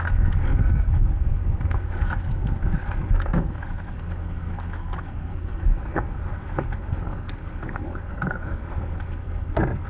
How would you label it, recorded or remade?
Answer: remade